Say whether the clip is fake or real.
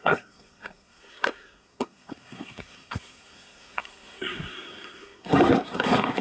fake